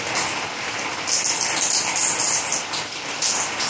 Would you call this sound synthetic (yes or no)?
no